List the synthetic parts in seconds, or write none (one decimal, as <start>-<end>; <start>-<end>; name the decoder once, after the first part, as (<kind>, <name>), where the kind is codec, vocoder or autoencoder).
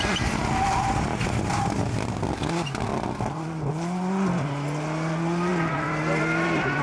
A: 2.9-3.7 (vocoder, BigVGAN v2); 5.5-6.8